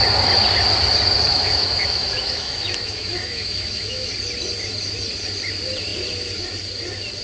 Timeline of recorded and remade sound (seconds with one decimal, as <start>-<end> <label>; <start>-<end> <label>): 0.0-1.3 recorded; 1.3-4.1 remade; 4.1-7.2 recorded